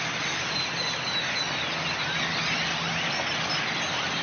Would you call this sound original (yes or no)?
yes